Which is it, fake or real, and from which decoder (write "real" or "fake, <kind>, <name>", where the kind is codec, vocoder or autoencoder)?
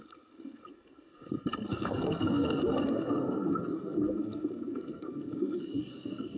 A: fake, codec, SNAC